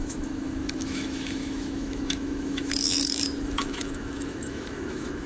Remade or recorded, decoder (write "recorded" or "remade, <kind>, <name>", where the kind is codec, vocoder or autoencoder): remade, autoencoder, DAC-VAE